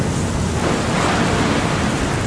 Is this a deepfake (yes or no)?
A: no